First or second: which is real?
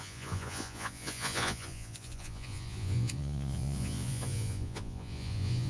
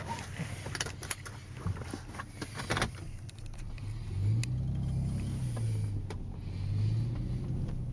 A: second